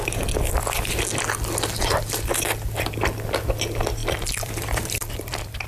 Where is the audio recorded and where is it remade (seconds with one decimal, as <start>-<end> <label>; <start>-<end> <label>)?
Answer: 0.0-4.0 recorded; 4.0-5.7 remade

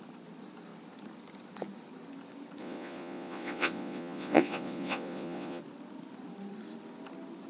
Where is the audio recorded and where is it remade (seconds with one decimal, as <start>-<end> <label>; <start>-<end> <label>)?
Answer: 0.0-2.6 recorded; 2.6-5.6 remade; 5.6-7.5 recorded

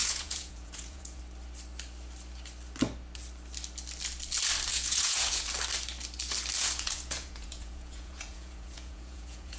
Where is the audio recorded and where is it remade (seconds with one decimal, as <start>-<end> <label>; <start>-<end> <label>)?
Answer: 0.0-1.2 remade; 1.2-4.7 recorded; 4.7-5.5 remade; 5.5-6.6 recorded; 6.6-9.6 remade

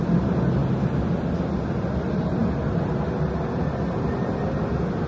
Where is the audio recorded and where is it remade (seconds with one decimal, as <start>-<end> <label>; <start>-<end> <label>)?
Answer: 0.0-5.1 recorded

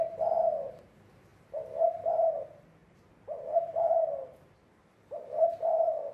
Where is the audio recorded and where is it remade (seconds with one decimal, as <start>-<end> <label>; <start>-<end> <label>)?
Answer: 0.0-2.8 recorded; 2.8-5.5 remade; 5.5-6.1 recorded

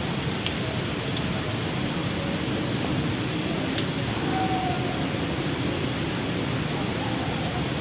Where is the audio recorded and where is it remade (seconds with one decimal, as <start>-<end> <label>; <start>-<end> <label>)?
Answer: 0.0-7.8 recorded